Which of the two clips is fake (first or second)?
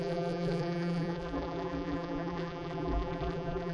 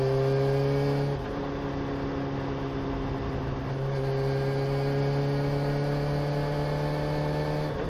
first